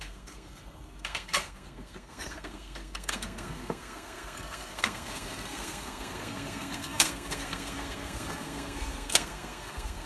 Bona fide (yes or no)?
no